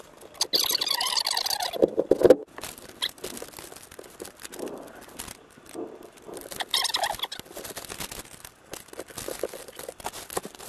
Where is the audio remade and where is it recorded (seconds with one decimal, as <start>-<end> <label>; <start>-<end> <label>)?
0.0-10.7 recorded